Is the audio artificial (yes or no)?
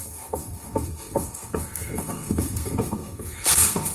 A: yes